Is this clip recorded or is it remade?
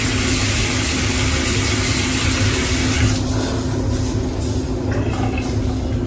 recorded